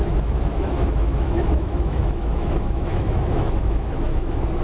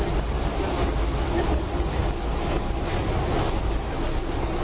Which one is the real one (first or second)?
second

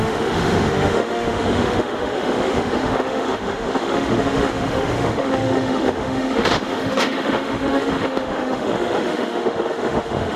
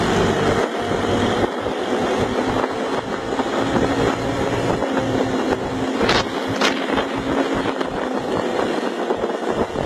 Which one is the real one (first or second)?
second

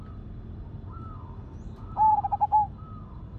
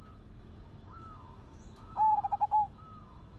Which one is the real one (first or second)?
first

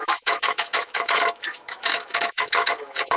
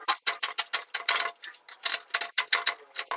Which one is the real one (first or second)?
second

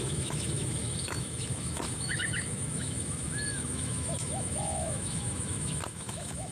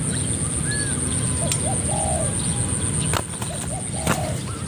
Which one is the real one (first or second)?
second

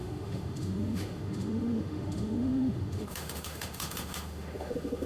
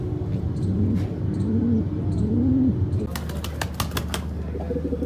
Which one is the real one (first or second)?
second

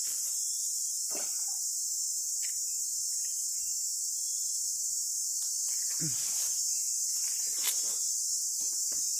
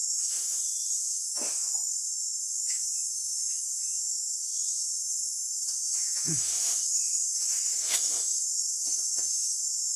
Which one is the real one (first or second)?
first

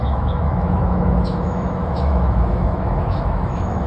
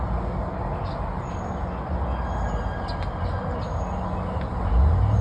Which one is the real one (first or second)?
second